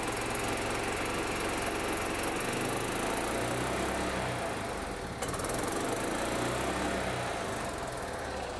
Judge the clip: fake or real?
real